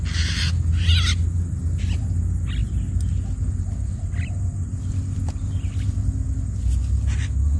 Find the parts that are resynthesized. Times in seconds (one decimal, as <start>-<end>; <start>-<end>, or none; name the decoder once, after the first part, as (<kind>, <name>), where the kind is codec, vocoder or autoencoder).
none